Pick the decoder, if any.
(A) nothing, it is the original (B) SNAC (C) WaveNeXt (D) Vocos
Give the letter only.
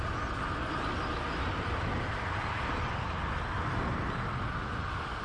A